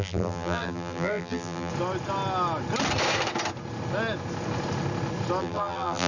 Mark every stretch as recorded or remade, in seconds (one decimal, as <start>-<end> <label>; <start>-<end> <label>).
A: 0.0-1.7 remade; 1.7-5.4 recorded; 5.4-6.1 remade